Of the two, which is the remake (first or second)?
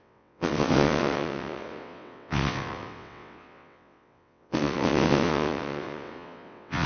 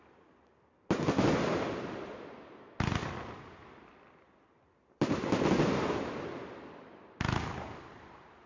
first